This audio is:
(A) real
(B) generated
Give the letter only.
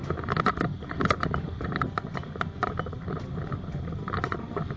A